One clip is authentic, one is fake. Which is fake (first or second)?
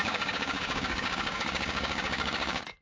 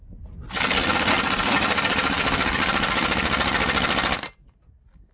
first